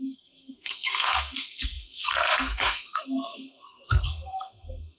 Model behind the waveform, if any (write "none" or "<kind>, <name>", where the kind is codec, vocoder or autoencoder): codec, SNAC